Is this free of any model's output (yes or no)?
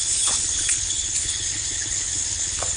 no